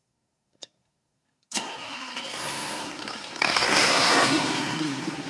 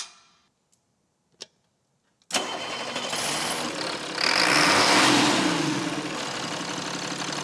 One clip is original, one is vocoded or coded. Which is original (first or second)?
second